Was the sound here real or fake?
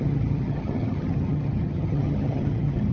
fake